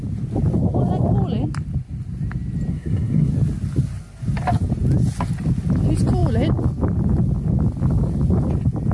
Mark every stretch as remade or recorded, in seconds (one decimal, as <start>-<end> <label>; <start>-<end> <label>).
0.0-2.7 recorded; 2.7-3.3 remade; 3.3-8.9 recorded